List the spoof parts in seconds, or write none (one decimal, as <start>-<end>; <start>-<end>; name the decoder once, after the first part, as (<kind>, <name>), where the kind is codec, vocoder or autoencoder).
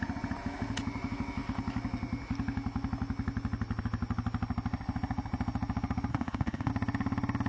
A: 6.1-6.7 (codec, ZipCodec)